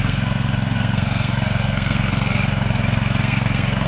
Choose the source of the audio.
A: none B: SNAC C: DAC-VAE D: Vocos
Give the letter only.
B